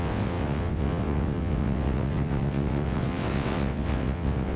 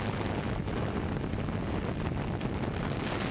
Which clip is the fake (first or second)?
first